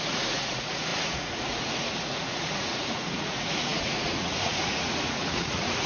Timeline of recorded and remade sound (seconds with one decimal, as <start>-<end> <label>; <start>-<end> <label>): 0.0-5.9 remade